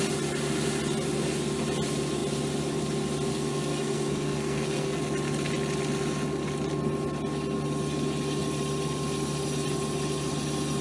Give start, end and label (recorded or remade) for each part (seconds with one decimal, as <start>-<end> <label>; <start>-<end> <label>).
0.0-3.3 recorded; 3.3-5.0 remade; 5.0-10.8 recorded